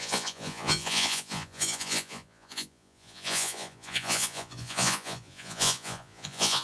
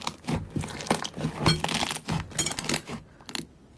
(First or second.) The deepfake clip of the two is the first